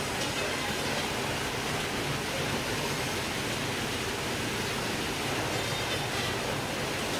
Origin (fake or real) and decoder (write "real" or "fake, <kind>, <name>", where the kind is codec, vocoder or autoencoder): real